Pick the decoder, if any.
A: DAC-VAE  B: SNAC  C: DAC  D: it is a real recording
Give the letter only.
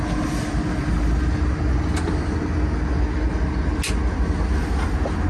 D